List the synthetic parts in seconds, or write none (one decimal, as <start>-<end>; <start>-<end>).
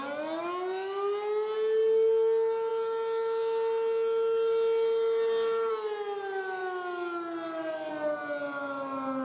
none